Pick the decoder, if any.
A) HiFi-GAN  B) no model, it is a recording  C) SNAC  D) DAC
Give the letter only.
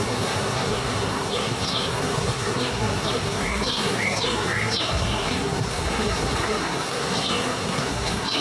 C